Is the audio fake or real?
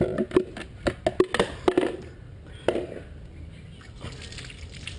real